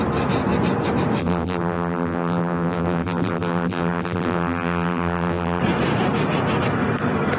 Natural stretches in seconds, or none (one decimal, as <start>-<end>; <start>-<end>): 0.0-1.2; 5.6-7.4